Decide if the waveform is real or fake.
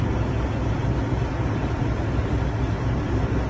real